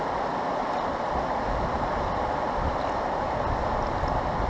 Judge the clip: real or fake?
real